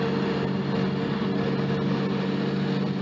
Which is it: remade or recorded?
recorded